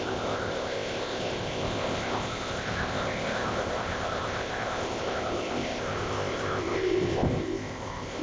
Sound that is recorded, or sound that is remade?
remade